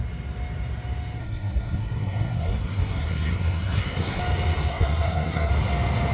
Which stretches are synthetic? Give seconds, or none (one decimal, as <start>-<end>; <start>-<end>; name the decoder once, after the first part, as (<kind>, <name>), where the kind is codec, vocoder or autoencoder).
1.2-4.2 (codec, SNAC); 4.7-5.5